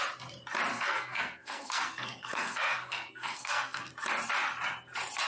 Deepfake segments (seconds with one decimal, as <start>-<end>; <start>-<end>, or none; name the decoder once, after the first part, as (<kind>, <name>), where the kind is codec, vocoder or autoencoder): 0.7-3.9 (codec, SNAC)